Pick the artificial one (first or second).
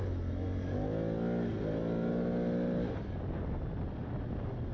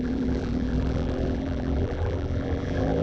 second